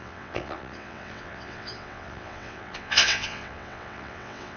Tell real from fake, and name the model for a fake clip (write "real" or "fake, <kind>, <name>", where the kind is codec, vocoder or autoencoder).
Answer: fake, vocoder, WaveNeXt